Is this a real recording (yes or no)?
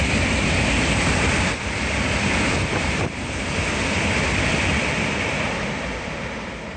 no